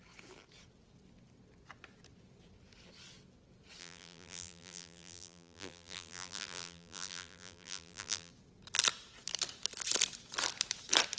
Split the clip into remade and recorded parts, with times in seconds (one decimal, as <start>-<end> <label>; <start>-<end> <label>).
0.0-3.8 recorded; 3.8-8.3 remade; 8.3-11.2 recorded